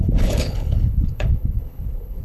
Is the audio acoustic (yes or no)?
no